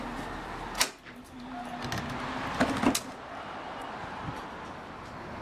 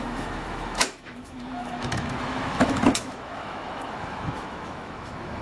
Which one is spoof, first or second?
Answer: second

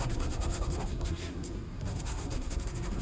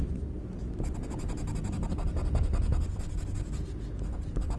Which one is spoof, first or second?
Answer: first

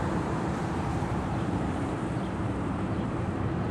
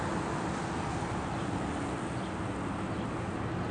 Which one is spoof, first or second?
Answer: first